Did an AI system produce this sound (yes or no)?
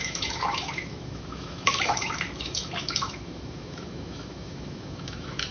yes